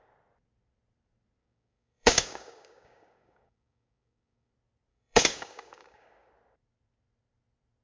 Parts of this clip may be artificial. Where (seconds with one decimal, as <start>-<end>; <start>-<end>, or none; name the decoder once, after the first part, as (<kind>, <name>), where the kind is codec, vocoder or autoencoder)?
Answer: 1.4-4.5 (codec, DAC); 4.9-6.3